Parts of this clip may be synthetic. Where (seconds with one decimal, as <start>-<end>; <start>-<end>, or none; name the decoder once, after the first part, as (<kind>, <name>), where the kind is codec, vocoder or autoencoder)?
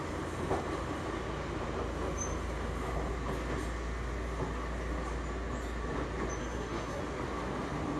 6.4-7.0 (codec, SNAC)